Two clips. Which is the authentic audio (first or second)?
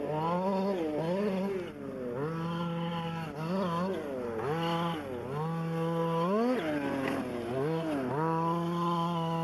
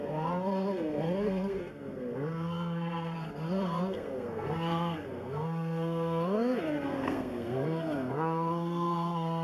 first